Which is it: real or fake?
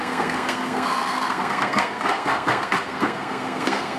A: fake